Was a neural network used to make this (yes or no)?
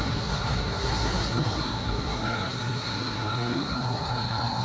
yes